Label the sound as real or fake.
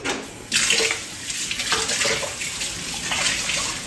real